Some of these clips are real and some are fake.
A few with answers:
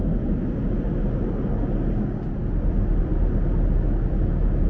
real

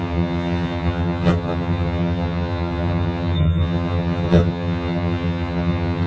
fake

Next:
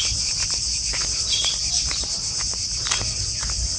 real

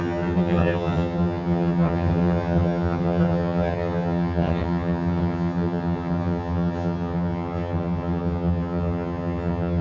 fake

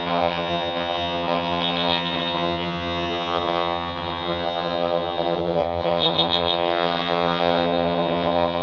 fake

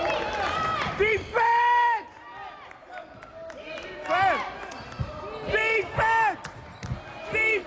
real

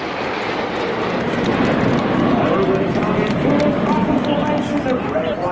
real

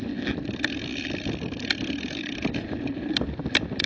real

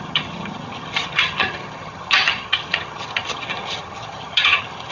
fake